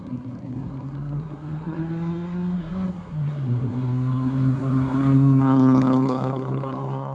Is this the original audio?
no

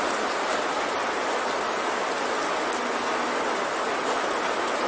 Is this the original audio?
yes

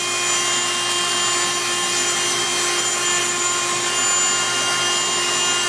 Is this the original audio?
yes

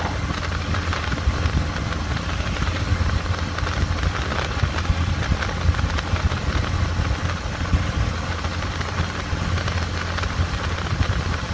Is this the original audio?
yes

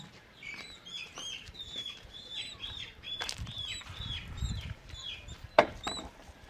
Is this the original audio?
no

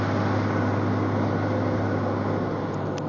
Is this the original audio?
yes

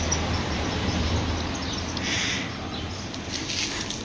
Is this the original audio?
yes